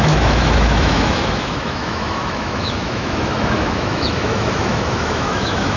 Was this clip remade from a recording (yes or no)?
yes